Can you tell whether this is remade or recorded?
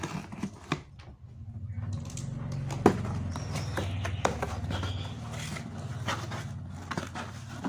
recorded